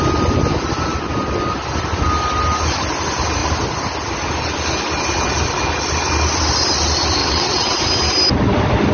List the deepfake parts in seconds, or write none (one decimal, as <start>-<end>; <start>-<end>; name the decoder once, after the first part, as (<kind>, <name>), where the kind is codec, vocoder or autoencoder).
7.2-7.8 (vocoder, WaveNeXt)